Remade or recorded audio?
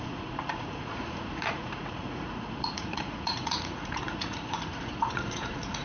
remade